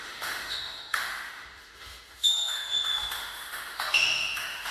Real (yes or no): no